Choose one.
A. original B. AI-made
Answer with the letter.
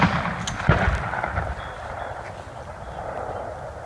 A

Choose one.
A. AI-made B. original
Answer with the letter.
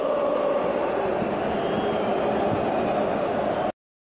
B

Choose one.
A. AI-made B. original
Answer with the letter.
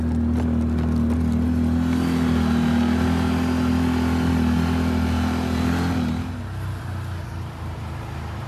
B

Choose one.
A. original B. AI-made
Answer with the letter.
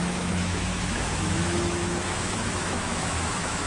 B